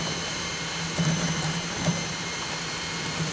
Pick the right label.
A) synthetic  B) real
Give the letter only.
A